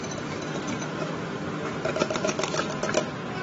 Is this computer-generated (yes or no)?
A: no